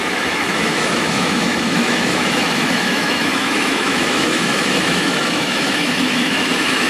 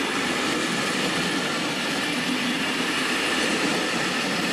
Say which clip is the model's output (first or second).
first